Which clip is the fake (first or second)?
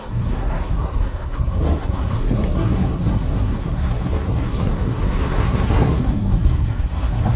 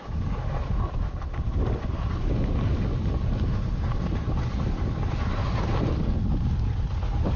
first